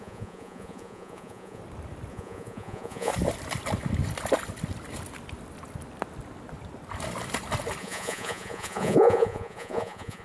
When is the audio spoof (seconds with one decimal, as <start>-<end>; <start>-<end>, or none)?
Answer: 0.0-1.6; 2.1-3.1; 7.8-10.2

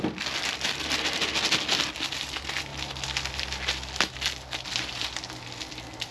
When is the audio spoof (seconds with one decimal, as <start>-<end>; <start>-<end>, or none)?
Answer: none

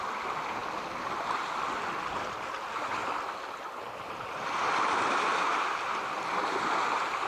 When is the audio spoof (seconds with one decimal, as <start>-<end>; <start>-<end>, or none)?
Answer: none